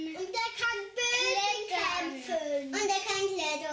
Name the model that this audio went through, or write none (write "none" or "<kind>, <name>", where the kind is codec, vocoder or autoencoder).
none